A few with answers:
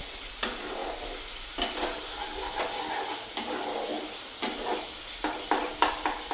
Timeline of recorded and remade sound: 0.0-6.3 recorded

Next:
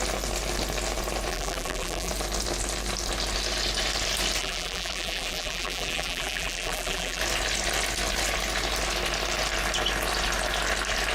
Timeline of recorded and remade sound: 0.0-1.3 recorded; 1.3-2.1 remade; 2.1-4.4 recorded; 4.4-7.2 remade; 7.2-11.1 recorded